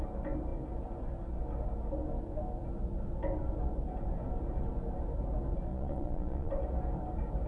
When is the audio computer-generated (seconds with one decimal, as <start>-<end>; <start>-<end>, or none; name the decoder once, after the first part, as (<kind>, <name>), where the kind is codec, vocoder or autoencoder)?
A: 5.7-6.5 (vocoder, Vocos)